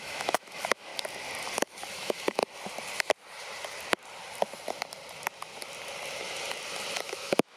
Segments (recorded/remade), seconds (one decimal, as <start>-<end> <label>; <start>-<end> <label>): 0.0-0.9 remade; 0.9-1.9 recorded; 1.9-2.4 remade; 2.4-7.0 recorded; 7.0-7.6 remade